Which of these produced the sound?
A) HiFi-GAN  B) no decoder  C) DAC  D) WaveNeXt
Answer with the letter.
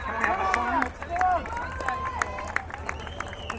B